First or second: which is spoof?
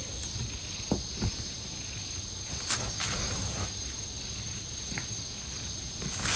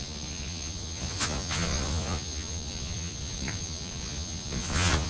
second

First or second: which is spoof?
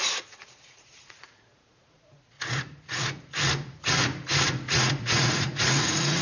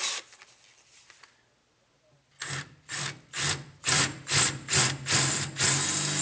first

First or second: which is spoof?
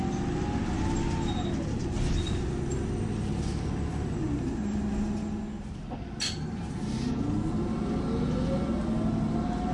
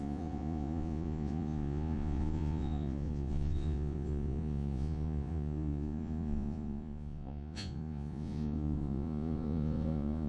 second